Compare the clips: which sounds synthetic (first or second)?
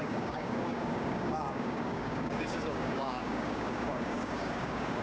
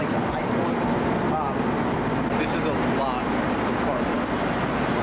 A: first